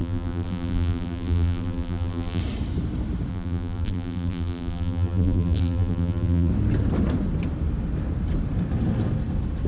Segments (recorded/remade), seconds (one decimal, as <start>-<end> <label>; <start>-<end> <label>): 0.0-2.4 remade; 2.4-3.3 recorded; 3.3-6.5 remade; 6.5-9.7 recorded